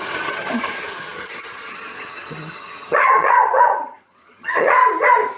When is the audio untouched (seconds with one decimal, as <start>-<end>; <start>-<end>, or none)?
4.8-5.4